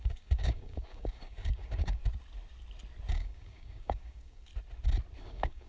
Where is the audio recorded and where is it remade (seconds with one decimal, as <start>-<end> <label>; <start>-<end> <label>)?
0.0-2.0 remade; 2.0-3.1 recorded; 3.1-4.5 remade; 4.5-5.2 recorded; 5.2-5.7 remade